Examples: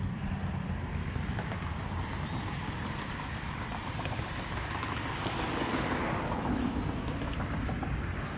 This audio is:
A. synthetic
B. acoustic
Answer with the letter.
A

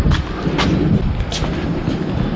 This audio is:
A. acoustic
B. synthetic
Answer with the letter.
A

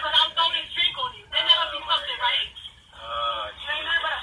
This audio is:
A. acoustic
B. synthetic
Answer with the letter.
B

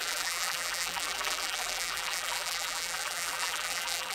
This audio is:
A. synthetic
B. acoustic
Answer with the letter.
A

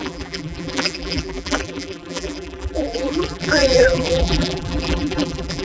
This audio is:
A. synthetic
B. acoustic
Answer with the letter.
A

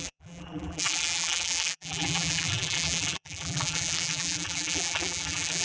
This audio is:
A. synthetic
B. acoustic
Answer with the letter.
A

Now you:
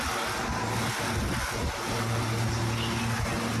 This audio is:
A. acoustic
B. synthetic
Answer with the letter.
A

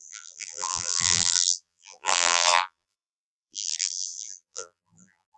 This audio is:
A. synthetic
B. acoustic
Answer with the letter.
A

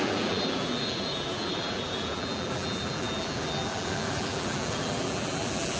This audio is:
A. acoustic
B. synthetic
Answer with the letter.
B